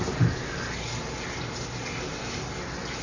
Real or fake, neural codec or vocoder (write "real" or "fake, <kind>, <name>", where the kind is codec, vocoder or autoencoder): real